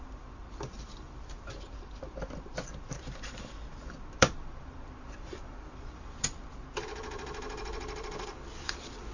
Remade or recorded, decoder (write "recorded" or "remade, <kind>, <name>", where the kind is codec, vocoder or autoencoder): remade, vocoder, BigVGAN v2